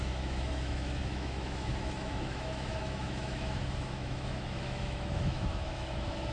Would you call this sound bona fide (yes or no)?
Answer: no